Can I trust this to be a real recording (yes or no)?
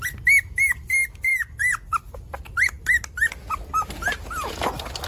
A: yes